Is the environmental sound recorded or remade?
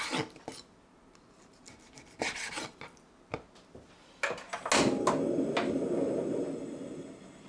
recorded